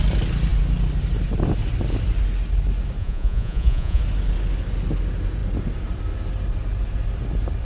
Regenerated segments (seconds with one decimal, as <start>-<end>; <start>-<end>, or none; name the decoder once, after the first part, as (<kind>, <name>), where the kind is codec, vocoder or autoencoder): 3.0-4.0 (vocoder, Vocos)